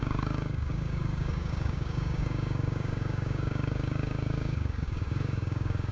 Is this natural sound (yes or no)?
no